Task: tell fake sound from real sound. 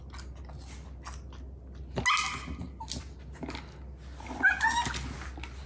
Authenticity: real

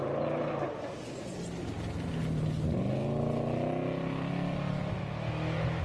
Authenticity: real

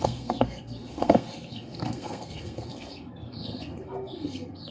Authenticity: fake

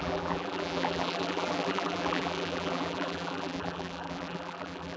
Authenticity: fake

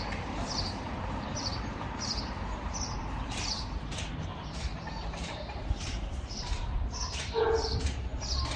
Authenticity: fake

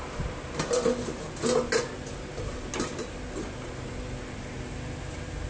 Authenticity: real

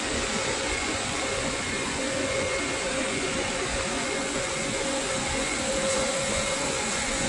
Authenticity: fake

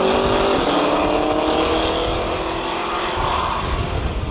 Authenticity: real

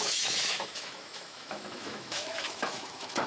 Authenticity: fake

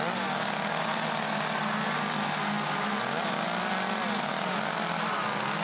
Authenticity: real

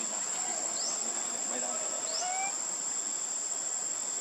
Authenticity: real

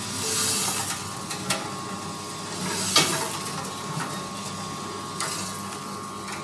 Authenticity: real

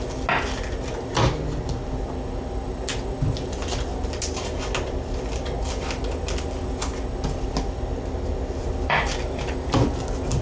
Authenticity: real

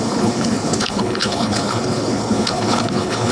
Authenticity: fake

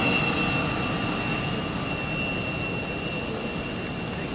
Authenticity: real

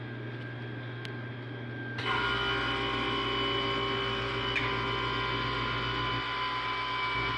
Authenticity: real